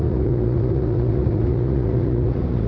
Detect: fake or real fake